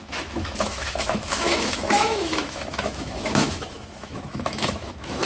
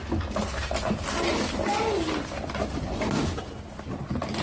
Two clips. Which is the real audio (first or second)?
second